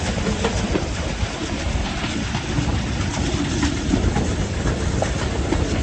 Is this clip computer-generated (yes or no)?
no